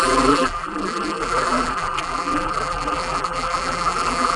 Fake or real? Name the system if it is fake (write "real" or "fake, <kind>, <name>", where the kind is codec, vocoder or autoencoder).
fake, vocoder, BigVGAN v2